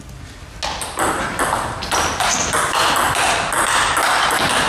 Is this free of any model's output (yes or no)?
yes